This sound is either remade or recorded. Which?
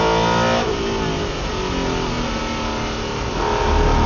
recorded